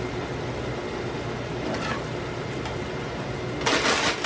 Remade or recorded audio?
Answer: recorded